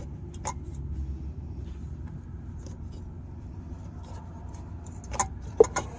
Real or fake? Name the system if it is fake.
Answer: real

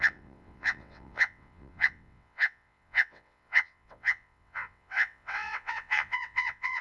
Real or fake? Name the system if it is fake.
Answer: fake, vocoder, WaveNeXt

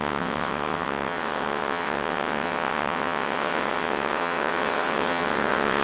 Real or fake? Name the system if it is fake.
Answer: fake, vocoder, WaveNeXt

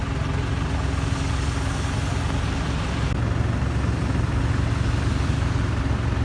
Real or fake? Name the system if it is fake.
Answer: real